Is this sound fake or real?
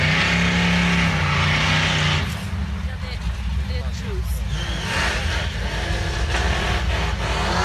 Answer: real